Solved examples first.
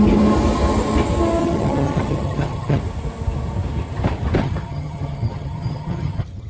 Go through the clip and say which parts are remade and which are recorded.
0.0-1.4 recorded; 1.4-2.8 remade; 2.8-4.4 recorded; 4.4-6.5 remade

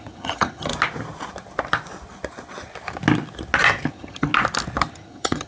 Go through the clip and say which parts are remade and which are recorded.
0.0-0.7 remade; 0.7-3.9 recorded; 3.9-4.3 remade; 4.3-4.9 recorded; 4.9-5.5 remade

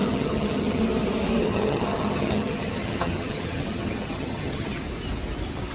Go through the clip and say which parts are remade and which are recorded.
0.0-0.8 remade; 0.8-1.4 recorded; 1.4-4.8 remade; 4.8-5.7 recorded

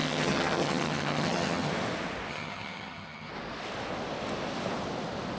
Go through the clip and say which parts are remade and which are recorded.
0.0-1.7 remade; 1.7-2.3 recorded; 2.3-3.3 remade; 3.3-5.4 recorded

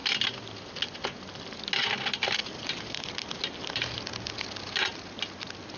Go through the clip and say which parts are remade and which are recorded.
0.0-5.8 recorded

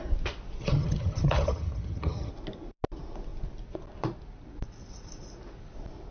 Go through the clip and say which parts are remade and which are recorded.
0.0-0.6 recorded; 0.6-2.3 remade; 2.3-6.1 recorded